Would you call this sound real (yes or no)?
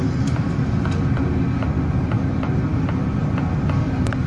yes